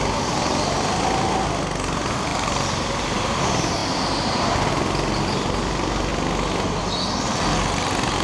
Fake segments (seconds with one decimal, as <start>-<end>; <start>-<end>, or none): 2.3-3.4